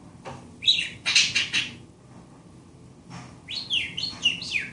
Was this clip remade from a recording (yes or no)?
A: no